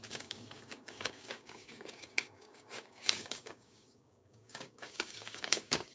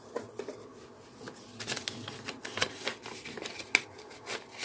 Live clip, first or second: second